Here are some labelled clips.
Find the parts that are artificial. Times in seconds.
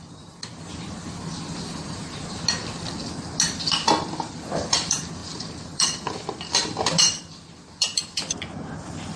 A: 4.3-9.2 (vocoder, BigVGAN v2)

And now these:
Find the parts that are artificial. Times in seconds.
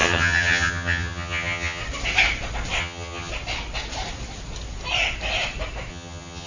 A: 0.0-1.8 (vocoder, HiFi-GAN); 2.8-3.3; 5.9-6.5